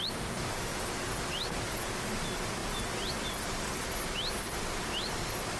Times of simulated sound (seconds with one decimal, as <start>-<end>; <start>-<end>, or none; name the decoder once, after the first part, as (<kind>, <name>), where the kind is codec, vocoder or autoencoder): 0.0-0.7 (vocoder, BigVGAN v2); 1.9-5.6